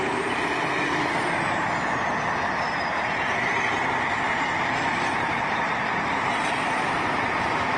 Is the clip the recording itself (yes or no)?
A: no